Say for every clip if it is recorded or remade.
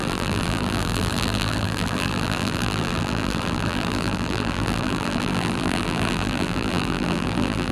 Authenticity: remade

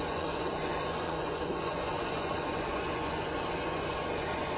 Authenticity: remade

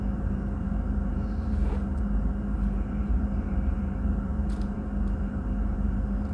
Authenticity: remade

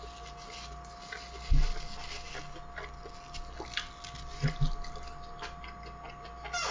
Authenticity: recorded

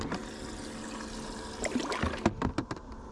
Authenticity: recorded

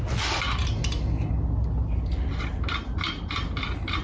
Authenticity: recorded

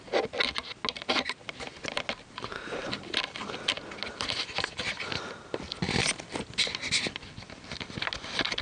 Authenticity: recorded